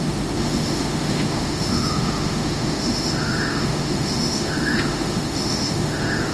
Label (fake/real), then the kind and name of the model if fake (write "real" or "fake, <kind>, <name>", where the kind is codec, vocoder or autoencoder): fake, autoencoder, DAC-VAE